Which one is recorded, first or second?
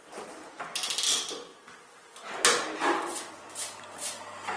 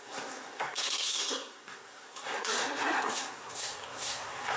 first